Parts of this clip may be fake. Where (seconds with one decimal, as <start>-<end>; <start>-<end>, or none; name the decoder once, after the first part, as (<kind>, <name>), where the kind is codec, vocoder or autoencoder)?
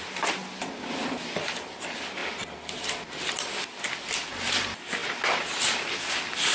0.0-0.4 (vocoder, BigVGAN v2); 1.0-6.5